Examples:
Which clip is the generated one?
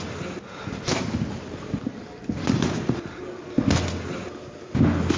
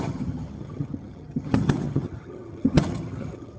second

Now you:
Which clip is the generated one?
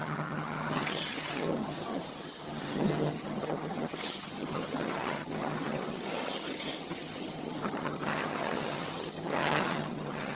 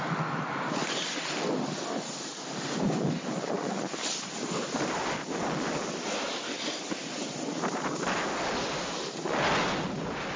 first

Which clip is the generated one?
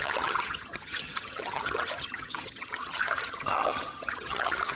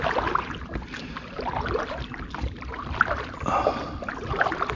first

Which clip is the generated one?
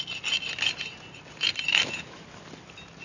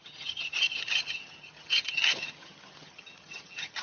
second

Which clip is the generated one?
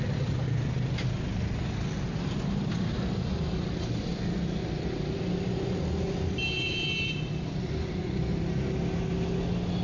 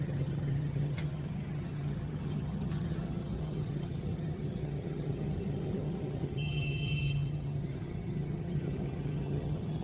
second